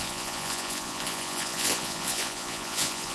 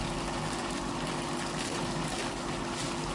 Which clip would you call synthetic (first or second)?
first